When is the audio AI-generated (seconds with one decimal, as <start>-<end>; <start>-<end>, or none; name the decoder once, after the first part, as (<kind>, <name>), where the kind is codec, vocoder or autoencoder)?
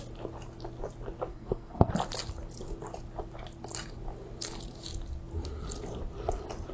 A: 1.3-1.9 (codec, SNAC)